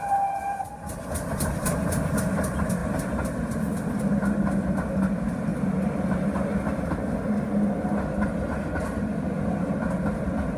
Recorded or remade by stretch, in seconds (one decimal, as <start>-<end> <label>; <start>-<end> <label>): 0.0-10.6 recorded